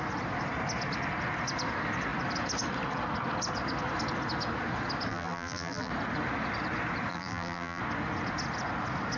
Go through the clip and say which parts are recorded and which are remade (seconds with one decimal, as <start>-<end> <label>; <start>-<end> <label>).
0.0-5.1 recorded; 5.1-5.9 remade; 5.9-7.1 recorded; 7.1-7.8 remade; 7.8-9.2 recorded